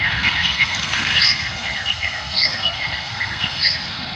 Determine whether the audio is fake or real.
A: fake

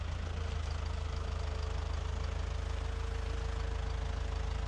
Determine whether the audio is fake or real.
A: real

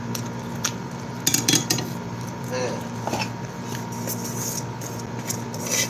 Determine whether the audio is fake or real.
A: real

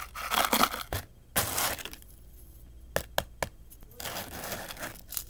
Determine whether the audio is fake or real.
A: real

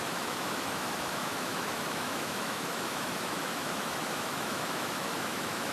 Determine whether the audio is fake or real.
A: fake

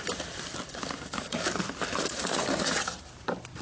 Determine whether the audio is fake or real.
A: fake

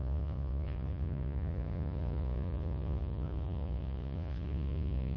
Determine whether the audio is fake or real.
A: fake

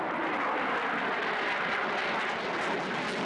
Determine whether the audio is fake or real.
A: real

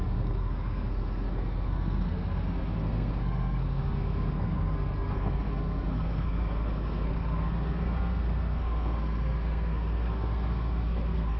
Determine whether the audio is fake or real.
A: fake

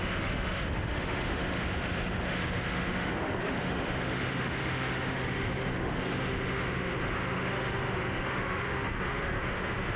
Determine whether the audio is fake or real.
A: fake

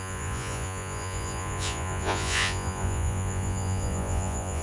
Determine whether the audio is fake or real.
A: fake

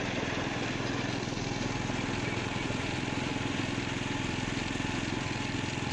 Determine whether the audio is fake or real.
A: real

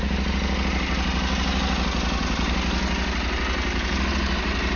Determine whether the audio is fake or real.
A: real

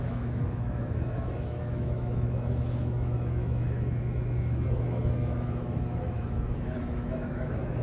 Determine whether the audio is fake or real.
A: fake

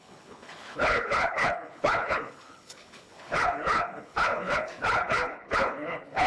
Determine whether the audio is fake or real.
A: fake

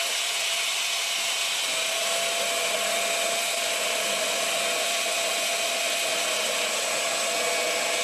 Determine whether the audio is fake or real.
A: real